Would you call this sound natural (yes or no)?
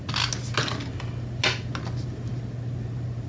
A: yes